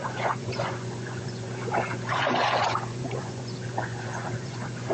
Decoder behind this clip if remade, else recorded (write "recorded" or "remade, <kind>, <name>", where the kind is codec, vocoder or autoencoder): remade, vocoder, Vocos